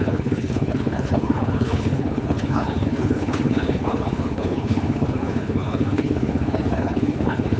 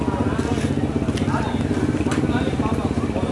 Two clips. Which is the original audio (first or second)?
second